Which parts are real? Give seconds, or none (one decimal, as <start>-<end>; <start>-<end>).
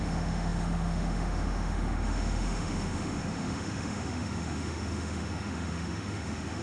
none